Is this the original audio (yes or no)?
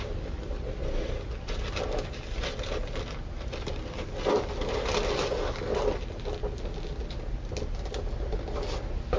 yes